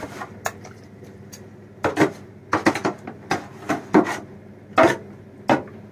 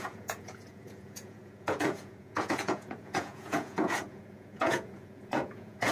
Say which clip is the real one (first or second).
first